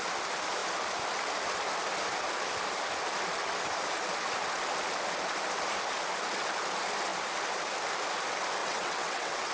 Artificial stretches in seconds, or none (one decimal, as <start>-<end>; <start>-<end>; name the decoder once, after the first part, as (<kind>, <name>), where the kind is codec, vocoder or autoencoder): 8.6-9.5 (vocoder, WaveNeXt)

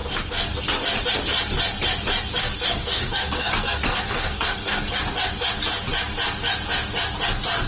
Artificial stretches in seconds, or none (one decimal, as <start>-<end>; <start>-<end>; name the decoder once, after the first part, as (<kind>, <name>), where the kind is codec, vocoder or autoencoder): 2.4-5.0 (codec, SNAC)

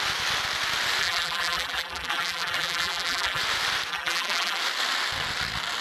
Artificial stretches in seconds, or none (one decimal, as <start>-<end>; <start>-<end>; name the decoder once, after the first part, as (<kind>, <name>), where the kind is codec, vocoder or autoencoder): 1.0-3.4 (vocoder, BigVGAN v2); 3.9-4.6

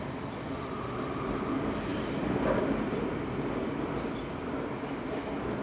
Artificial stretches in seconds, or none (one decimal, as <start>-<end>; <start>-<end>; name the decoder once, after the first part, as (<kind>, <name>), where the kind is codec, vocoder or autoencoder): none

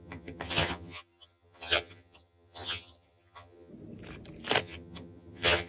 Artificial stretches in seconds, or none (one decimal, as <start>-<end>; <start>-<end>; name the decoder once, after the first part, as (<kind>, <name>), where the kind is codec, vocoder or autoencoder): 0.0-3.7 (vocoder, HiFi-GAN); 4.6-5.7

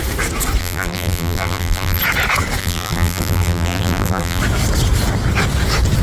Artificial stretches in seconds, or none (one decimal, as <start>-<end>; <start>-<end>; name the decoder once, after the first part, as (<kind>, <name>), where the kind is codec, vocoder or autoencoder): 0.6-2.0 (vocoder, BigVGAN v2); 2.6-4.4

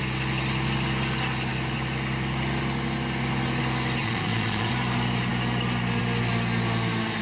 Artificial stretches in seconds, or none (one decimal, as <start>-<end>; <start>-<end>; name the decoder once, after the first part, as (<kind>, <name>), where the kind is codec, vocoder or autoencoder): 4.0-4.7 (vocoder, Vocos)

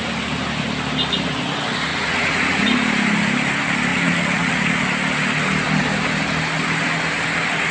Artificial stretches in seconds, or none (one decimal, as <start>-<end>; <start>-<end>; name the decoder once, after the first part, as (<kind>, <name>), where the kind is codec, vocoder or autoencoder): 1.9-2.9 (vocoder, Vocos); 3.9-4.8